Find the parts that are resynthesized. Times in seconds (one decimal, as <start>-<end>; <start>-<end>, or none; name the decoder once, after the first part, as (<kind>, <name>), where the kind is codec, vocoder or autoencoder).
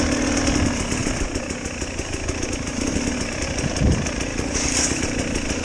4.3-5.0 (codec, DAC)